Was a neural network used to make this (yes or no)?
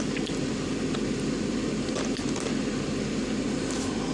no